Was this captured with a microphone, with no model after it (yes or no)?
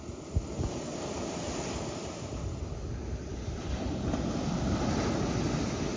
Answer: yes